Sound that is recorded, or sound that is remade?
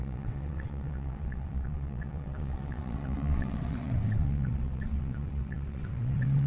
remade